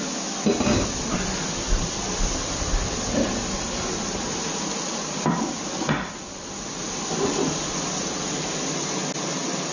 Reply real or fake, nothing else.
real